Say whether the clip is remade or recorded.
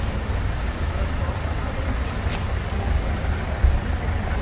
recorded